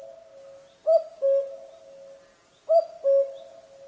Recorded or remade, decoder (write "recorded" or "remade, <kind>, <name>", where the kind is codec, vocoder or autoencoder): recorded